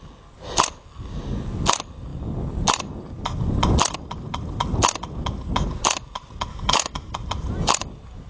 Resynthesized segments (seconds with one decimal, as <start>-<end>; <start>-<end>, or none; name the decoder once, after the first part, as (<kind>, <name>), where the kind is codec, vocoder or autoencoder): 6.5-7.1 (autoencoder, DAC-VAE)